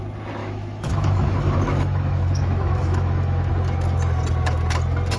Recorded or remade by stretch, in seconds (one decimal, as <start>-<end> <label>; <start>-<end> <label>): 0.0-0.4 recorded; 0.4-3.5 remade; 3.5-5.2 recorded